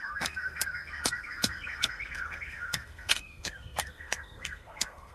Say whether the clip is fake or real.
fake